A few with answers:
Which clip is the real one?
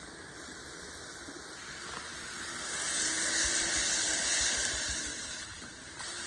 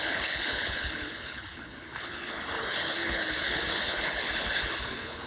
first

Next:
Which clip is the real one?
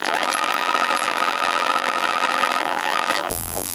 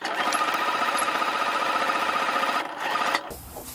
second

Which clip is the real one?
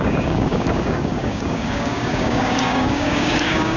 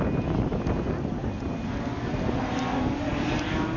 second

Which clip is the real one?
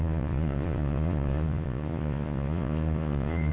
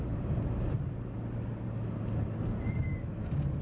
second